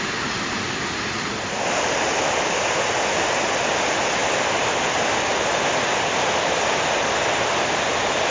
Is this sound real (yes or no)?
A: yes